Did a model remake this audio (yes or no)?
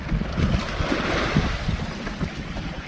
no